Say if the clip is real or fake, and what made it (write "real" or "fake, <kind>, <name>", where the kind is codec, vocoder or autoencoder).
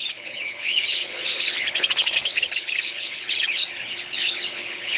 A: fake, codec, HILCodec